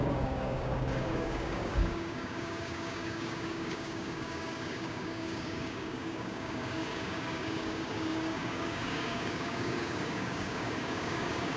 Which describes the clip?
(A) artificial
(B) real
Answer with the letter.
A